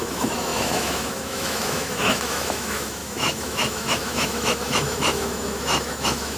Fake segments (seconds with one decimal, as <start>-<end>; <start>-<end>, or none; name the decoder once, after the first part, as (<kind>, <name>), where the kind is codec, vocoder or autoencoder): 0.0-6.4 (autoencoder, DAC-VAE)